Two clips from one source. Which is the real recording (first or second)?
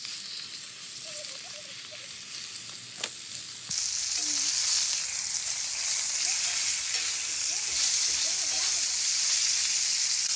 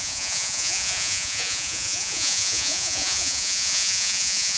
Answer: first